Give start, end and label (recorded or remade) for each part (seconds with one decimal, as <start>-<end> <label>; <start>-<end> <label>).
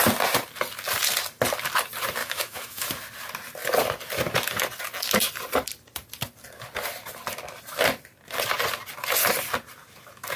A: 0.0-2.2 recorded; 2.2-2.9 remade; 2.9-10.4 recorded